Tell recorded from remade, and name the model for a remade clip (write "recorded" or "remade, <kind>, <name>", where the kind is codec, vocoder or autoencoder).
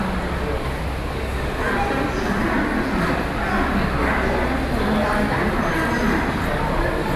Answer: recorded